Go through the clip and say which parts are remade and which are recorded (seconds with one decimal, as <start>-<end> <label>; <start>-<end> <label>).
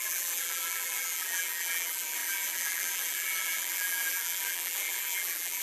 0.0-5.6 remade